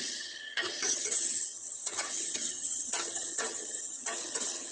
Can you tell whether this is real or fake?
fake